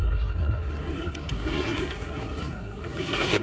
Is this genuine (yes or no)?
no